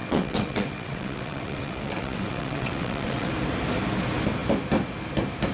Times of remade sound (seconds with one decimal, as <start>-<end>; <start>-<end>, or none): 0.0-3.3